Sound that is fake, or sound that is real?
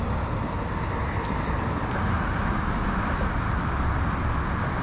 real